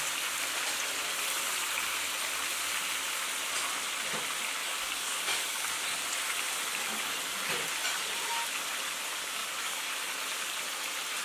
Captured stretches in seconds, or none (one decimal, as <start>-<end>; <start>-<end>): 0.0-4.6; 5.7-9.4; 9.9-11.2